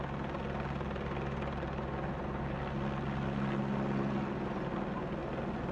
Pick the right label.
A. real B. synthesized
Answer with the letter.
A